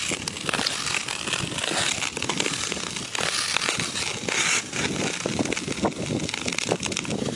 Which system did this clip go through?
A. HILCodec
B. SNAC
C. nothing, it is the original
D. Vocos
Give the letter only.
C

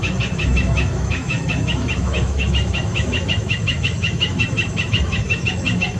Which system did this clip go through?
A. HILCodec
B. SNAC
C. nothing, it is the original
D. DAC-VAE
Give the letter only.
D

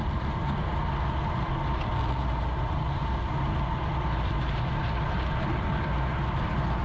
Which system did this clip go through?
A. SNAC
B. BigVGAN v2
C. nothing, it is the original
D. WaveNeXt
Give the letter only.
C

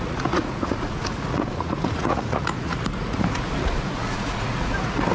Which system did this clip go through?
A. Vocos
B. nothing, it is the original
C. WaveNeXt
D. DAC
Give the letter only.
A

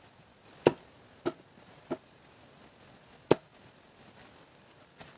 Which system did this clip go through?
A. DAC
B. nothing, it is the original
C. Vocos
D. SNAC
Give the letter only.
B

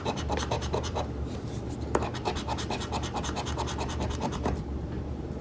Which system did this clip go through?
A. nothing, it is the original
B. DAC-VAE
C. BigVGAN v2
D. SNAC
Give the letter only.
C